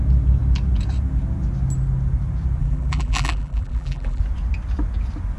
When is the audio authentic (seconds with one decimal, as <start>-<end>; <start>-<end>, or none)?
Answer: 0.0-2.6; 4.2-5.4